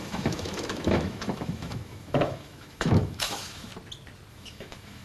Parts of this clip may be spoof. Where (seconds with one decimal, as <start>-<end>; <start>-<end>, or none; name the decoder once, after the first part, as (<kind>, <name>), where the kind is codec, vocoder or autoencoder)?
0.0-3.7 (autoencoder, DAC-VAE); 4.3-5.0